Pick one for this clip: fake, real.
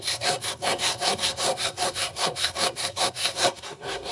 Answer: fake